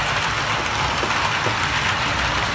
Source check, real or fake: real